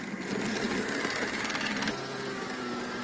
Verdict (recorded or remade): recorded